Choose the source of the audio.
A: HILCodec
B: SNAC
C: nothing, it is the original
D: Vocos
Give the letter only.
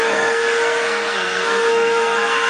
B